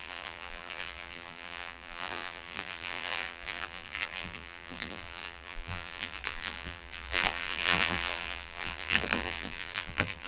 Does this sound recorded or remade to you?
remade